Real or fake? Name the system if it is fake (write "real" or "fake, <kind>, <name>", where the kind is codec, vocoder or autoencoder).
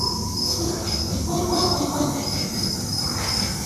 real